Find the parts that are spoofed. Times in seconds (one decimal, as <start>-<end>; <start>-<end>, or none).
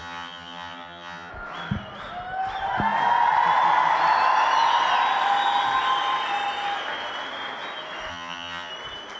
0.0-1.3; 8.1-8.7